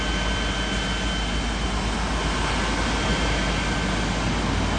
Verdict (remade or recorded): recorded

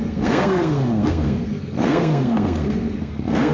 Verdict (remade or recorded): remade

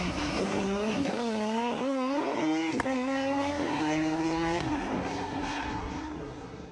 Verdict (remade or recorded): remade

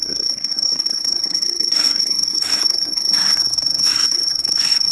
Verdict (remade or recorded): remade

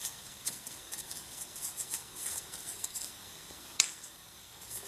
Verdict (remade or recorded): remade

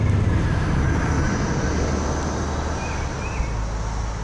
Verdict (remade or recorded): recorded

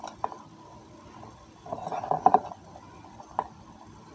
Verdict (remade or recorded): recorded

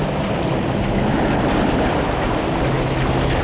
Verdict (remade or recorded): recorded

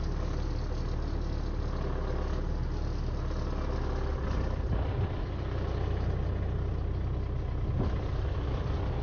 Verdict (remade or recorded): recorded